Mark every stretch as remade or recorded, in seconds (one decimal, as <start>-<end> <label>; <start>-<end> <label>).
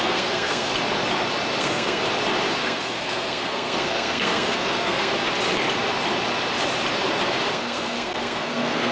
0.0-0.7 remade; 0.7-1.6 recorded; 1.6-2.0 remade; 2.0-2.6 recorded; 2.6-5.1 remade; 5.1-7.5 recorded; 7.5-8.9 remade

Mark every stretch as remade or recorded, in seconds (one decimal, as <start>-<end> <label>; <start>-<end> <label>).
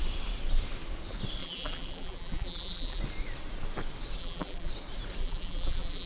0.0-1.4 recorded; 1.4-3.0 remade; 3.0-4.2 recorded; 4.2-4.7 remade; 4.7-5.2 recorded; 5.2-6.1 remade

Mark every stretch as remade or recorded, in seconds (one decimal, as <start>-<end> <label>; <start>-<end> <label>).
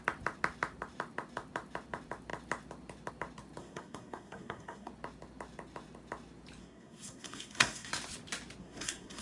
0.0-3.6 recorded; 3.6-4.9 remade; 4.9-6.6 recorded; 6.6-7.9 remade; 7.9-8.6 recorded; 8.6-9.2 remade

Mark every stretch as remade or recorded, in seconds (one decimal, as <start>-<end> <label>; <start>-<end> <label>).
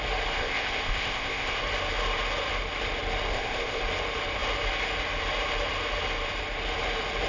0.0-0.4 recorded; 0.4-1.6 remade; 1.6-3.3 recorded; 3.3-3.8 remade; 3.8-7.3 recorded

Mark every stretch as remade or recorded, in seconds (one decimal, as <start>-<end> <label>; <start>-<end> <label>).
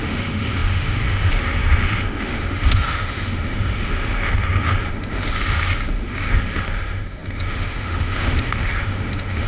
0.0-9.5 remade